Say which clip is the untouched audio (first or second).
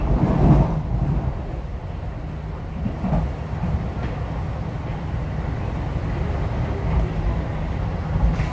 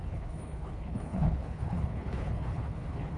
first